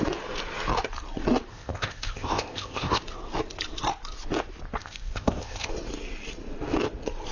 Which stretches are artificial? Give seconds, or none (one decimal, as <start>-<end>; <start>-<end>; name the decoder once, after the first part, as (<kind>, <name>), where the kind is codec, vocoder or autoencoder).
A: 1.5-3.0 (codec, ZipCodec); 4.8-5.7